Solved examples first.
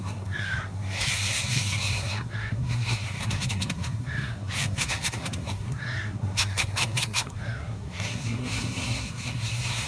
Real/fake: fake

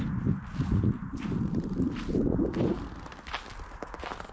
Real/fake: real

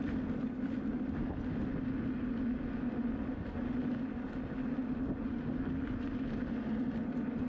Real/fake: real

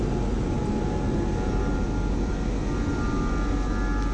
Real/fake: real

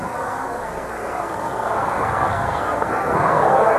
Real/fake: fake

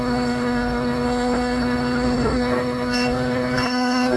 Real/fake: fake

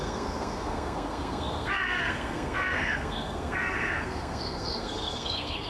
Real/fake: fake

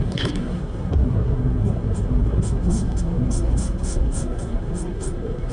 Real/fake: fake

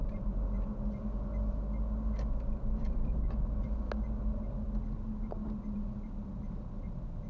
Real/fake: real